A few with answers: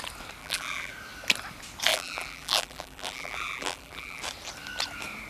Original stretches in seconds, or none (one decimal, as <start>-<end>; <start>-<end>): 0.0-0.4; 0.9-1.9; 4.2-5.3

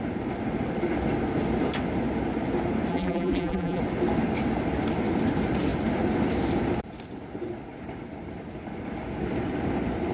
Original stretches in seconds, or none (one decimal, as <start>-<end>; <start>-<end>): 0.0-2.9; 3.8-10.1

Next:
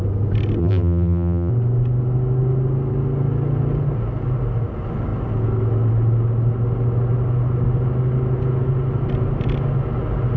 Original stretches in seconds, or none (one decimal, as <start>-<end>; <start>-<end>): 0.0-0.6; 1.5-10.4

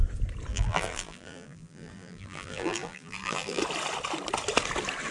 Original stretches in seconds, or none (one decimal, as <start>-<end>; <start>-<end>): 0.0-0.5; 3.6-5.1